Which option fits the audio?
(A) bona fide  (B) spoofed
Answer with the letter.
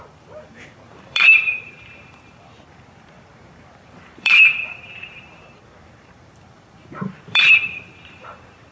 B